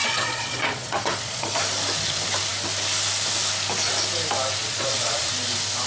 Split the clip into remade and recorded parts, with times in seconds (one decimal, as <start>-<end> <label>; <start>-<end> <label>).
0.0-1.6 remade; 1.6-4.6 recorded; 4.6-5.3 remade; 5.3-5.9 recorded